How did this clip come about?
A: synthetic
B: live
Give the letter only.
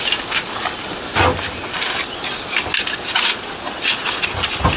B